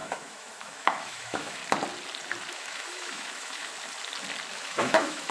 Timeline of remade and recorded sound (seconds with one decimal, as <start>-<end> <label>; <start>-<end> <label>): 0.0-1.6 remade; 1.6-2.5 recorded; 2.5-3.7 remade; 3.7-4.5 recorded; 4.5-5.3 remade